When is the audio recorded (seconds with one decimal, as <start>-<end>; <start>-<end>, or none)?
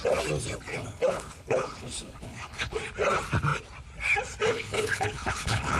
0.0-0.7; 2.8-4.5